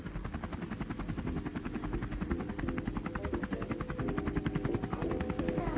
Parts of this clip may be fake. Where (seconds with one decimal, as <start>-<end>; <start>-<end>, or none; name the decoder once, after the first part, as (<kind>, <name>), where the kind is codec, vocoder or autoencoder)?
none

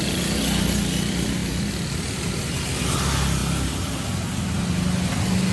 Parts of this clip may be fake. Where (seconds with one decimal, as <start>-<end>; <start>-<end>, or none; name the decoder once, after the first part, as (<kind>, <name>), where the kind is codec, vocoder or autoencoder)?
none

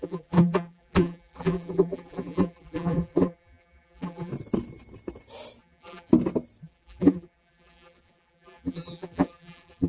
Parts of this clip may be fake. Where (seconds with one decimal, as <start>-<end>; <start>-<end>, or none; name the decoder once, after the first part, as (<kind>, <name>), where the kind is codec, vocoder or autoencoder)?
0.0-4.3 (vocoder, BigVGAN v2); 5.6-6.1; 6.6-9.9